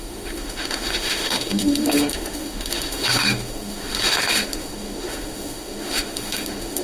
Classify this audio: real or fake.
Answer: fake